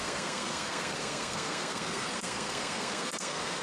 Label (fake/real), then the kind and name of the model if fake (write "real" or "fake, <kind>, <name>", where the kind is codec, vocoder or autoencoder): fake, codec, SNAC